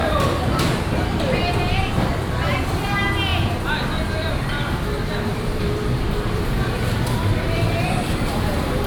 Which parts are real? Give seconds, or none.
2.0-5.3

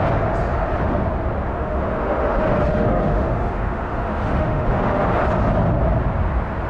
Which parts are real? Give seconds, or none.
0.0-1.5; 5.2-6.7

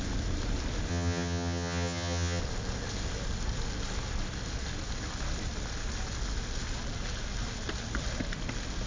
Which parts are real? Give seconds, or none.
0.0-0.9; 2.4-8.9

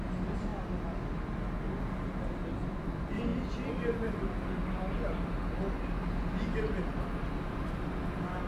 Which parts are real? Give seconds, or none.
0.0-8.5

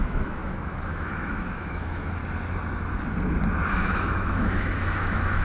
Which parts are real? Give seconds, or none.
2.2-3.7

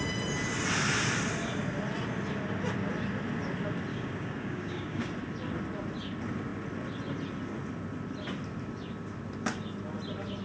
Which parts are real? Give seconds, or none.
0.0-3.9; 5.1-10.4